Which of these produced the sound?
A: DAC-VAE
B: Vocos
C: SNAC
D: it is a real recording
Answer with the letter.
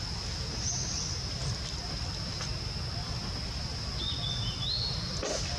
D